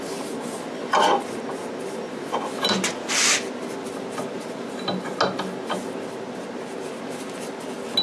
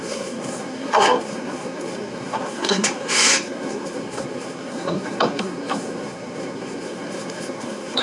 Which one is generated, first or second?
second